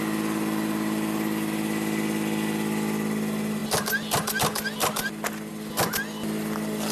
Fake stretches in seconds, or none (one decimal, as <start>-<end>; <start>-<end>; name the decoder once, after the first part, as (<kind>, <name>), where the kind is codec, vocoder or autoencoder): none